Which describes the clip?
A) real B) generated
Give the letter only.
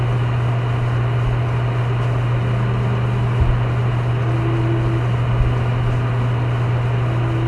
A